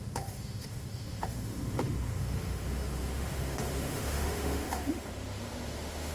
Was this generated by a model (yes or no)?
yes